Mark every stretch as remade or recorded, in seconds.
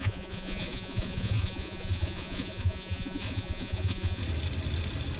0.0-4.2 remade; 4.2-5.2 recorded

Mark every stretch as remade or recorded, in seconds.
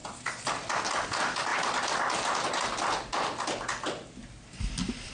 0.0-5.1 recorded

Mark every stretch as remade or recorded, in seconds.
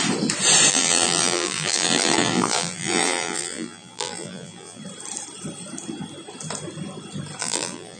0.0-0.7 recorded; 0.7-4.8 remade; 4.8-7.4 recorded; 7.4-8.0 remade